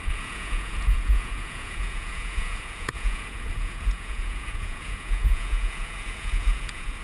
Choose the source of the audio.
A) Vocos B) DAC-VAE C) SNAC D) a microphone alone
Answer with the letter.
A